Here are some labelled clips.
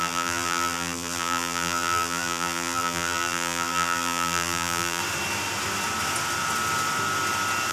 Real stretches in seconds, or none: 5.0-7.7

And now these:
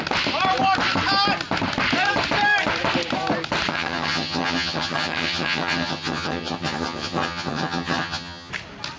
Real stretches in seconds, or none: 0.0-3.7; 8.5-9.0

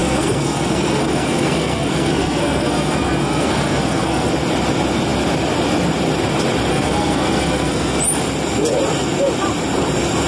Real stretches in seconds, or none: 4.3-6.7; 8.0-10.3

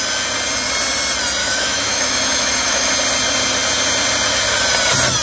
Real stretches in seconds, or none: 0.0-1.4; 2.9-5.2

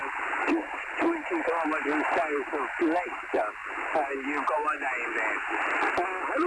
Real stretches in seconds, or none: 0.0-6.5

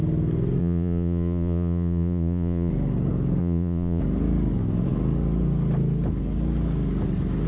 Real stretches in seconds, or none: 0.0-0.6; 2.7-3.4; 4.0-7.5

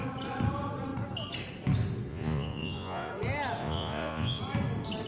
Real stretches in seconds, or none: 0.0-2.1; 3.1-3.6; 4.4-5.1

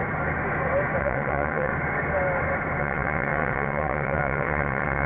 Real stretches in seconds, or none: 0.0-1.0; 1.7-2.8